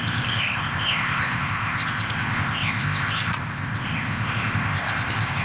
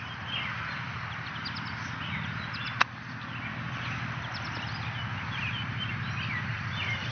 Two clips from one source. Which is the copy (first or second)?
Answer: first